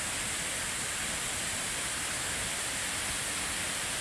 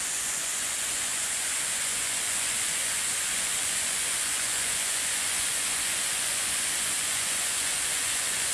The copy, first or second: second